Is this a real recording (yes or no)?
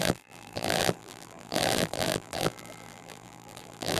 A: no